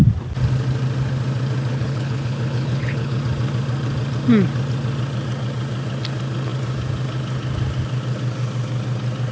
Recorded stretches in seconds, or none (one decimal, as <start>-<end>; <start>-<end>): 0.0-1.7; 3.2-9.3